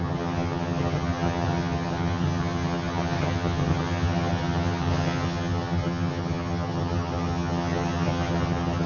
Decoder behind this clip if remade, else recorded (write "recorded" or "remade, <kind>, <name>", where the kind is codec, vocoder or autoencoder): remade, vocoder, HiFi-GAN